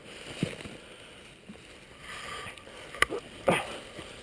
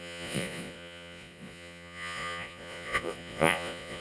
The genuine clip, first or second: first